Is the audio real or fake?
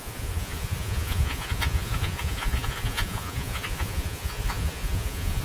fake